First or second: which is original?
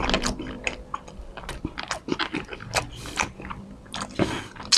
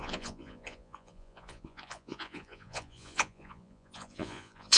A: first